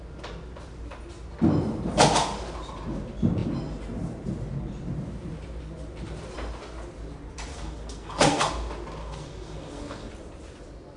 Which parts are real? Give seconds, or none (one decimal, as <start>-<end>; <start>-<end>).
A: 0.0-7.5; 8.5-9.0; 10.1-11.0